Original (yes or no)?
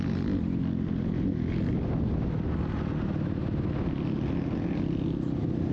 yes